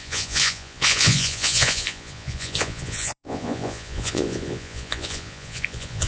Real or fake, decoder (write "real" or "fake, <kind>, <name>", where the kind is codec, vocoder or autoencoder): fake, vocoder, Vocos